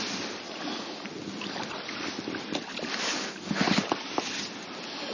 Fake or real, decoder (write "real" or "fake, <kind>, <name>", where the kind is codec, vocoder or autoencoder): real